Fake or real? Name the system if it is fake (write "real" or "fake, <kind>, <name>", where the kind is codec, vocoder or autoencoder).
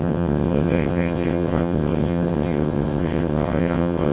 fake, vocoder, WaveNeXt